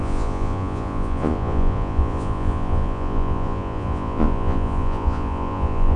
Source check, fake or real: fake